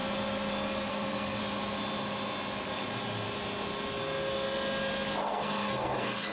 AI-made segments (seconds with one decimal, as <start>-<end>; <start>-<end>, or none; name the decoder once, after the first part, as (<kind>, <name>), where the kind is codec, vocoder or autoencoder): 0.9-1.4 (codec, SNAC); 5.2-6.3